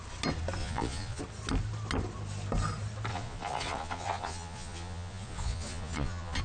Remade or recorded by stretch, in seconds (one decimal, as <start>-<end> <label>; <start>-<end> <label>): 0.0-0.6 recorded; 0.6-1.2 remade; 1.2-3.1 recorded; 3.1-6.4 remade